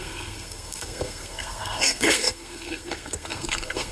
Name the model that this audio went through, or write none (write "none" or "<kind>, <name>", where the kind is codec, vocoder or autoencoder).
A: codec, SNAC